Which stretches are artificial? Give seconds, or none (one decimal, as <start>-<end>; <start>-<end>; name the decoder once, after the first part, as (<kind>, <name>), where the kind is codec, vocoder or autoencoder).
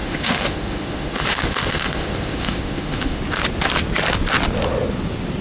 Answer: 0.0-3.2 (autoencoder, DAC-VAE)